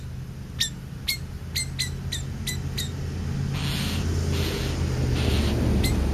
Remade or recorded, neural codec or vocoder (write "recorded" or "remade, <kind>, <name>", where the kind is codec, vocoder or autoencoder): recorded